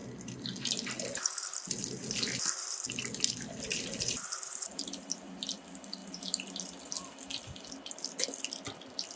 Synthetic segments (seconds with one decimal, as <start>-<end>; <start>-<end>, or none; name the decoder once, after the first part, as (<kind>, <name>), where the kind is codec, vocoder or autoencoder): 2.6-6.0 (vocoder, BigVGAN v2)